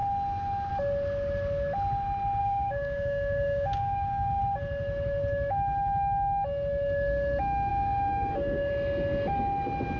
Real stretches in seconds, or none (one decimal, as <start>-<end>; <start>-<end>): 0.0-2.4; 4.4-7.7; 8.7-10.0